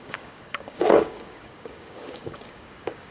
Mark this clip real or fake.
fake